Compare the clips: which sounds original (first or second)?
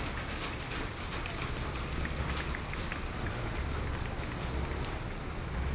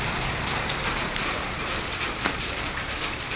first